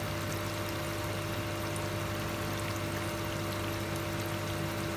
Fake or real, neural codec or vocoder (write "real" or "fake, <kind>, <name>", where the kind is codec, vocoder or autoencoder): real